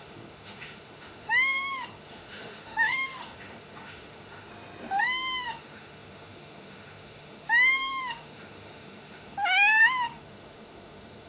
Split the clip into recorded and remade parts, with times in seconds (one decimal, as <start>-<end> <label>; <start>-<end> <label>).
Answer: 0.0-4.5 remade; 4.5-5.0 recorded; 5.0-11.3 remade